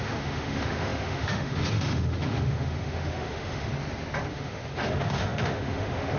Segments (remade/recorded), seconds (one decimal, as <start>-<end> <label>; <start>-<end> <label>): 0.0-3.7 remade; 3.7-4.3 recorded; 4.3-6.2 remade

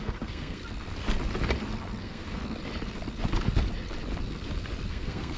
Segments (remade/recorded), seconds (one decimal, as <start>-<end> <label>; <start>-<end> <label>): 0.0-0.6 remade; 0.6-2.0 recorded; 2.0-2.4 remade; 2.4-4.9 recorded; 4.9-5.4 remade